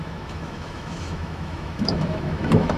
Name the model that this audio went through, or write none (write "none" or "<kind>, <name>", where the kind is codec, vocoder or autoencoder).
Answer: autoencoder, DAC-VAE